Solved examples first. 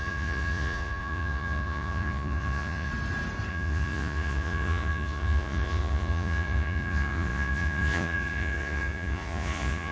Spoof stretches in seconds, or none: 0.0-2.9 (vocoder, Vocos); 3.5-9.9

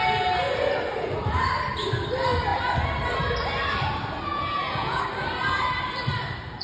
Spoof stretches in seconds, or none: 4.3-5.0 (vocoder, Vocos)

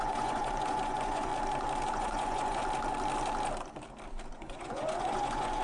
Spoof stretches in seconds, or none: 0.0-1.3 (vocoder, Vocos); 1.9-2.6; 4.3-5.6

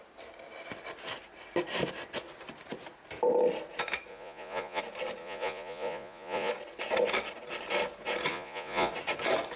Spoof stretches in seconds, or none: 4.1-4.8 (vocoder, Vocos); 5.2-6.5; 8.3-8.9

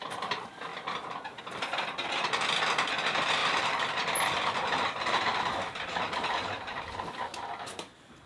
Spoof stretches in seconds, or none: none